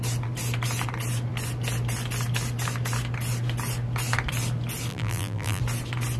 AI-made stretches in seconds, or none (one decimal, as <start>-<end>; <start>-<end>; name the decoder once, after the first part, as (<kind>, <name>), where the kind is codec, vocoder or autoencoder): 4.9-5.6 (vocoder, BigVGAN v2)